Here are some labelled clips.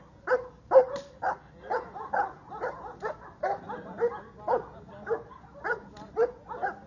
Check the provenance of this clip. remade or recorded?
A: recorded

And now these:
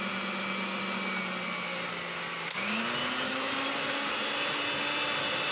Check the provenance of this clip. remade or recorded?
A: recorded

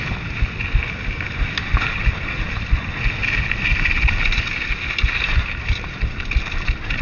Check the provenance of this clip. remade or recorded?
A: recorded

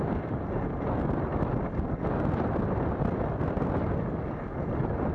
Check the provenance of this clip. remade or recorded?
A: recorded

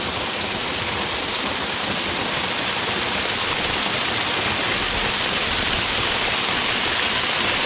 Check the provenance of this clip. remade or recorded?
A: recorded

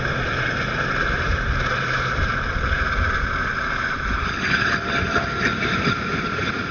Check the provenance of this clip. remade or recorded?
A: remade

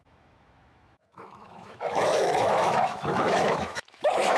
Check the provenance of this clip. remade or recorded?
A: remade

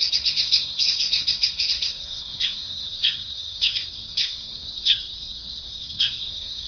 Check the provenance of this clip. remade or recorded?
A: remade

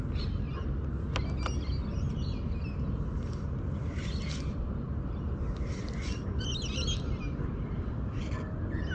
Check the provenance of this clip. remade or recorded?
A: recorded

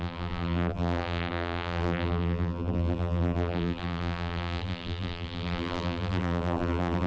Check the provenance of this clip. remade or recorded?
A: remade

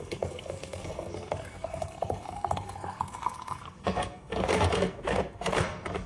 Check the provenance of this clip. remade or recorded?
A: remade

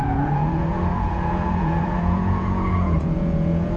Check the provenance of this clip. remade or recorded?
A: remade